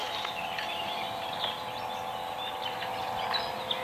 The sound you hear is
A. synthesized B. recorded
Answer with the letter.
B